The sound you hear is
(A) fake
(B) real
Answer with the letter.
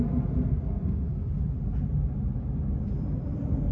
B